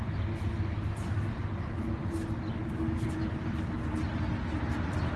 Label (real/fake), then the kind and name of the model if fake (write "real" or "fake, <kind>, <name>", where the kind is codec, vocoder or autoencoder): real